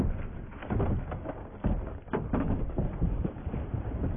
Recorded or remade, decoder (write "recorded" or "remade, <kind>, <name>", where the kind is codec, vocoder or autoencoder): recorded